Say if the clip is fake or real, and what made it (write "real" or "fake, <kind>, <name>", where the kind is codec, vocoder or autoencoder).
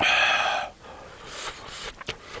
real